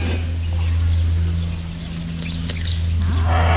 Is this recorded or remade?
recorded